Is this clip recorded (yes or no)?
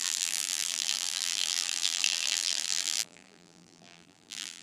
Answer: no